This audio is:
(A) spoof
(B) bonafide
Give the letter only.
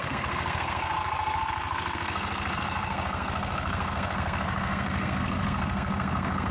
A